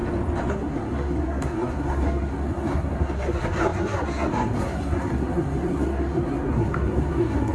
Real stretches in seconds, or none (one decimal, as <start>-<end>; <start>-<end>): 0.0-0.5